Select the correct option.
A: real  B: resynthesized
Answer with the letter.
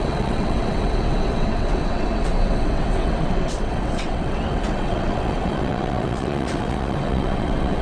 B